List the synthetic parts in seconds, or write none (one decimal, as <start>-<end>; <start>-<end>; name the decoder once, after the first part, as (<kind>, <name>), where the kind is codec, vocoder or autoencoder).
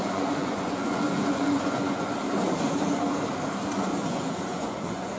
0.0-2.1 (vocoder, Vocos); 3.9-5.2